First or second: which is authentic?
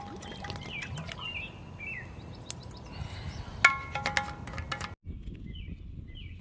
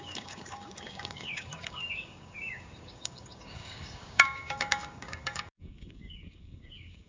first